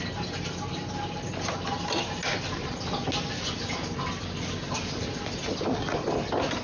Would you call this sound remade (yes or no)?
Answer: no